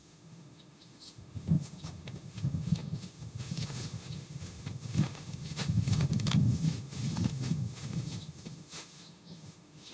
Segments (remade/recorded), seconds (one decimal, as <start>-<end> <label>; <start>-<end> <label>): 0.0-9.9 remade